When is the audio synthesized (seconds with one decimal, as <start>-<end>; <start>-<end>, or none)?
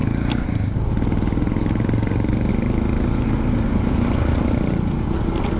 none